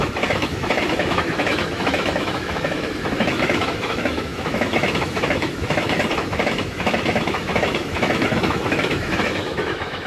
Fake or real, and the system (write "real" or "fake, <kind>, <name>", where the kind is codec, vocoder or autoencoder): fake, autoencoder, DAC-VAE